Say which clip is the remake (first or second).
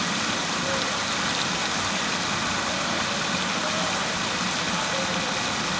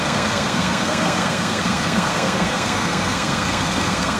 second